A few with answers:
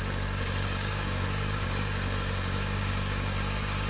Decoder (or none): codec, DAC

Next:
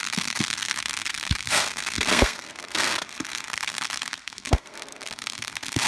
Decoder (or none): codec, SNAC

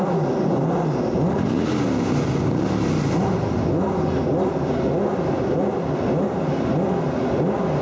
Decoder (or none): none